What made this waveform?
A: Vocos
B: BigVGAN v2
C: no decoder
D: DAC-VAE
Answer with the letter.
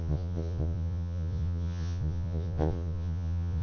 A